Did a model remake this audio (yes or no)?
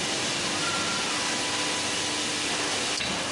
no